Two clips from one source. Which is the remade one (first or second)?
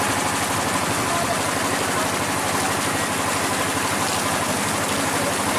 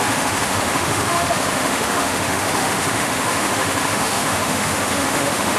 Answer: second